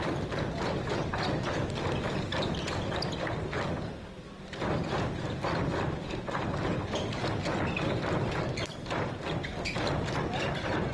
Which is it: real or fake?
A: real